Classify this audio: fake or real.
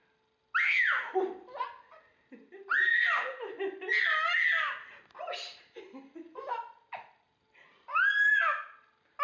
real